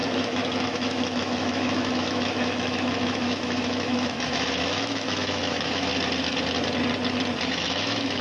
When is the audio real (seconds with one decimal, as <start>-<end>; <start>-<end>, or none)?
5.9-7.5

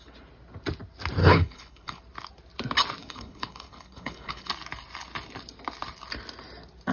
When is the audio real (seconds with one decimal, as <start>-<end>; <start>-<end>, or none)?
0.0-1.2; 2.0-3.0; 4.5-6.9